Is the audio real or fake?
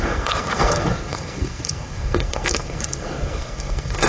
fake